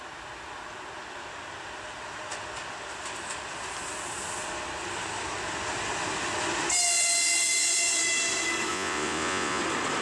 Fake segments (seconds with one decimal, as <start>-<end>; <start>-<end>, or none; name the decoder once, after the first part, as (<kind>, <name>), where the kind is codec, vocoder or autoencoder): 8.7-9.6 (vocoder, Vocos)